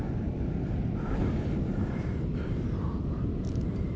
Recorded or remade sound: remade